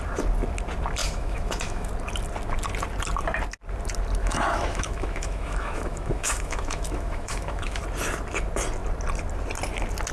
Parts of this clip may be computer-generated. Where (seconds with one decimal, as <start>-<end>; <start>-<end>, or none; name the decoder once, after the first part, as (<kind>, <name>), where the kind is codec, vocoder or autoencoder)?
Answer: 1.0-1.9 (autoencoder, DAC-VAE); 4.2-7.8